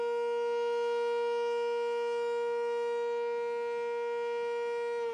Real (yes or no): yes